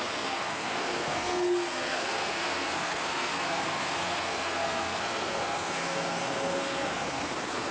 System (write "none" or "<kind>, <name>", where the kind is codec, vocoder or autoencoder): codec, SNAC